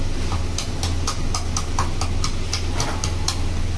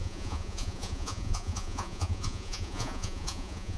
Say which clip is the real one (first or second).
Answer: first